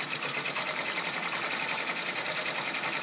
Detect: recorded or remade recorded